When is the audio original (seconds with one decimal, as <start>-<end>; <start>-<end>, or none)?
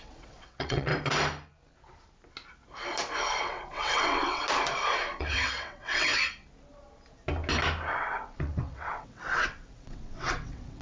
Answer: 0.9-3.4; 4.4-5.2; 6.1-7.9